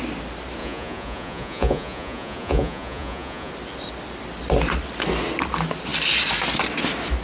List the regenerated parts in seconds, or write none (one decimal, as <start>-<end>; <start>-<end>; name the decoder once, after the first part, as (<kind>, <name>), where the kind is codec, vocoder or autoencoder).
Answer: 0.6-3.5 (vocoder, Vocos)